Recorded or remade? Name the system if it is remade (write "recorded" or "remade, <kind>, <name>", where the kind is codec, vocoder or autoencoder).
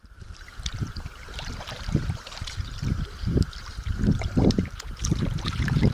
remade, vocoder, BigVGAN v2